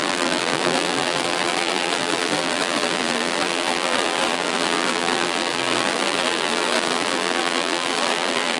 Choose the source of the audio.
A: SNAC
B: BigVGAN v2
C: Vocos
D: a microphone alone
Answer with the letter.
B